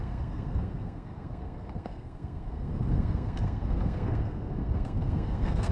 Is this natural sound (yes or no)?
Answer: no